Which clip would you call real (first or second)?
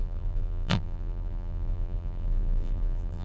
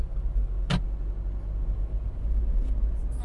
second